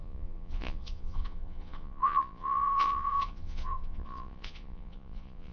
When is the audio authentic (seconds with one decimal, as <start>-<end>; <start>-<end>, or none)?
none

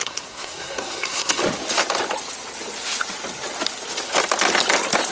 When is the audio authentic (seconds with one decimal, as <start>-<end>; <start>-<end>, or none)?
1.4-5.1